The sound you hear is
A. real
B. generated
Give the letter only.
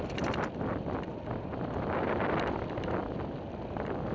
A